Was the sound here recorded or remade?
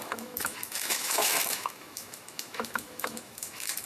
remade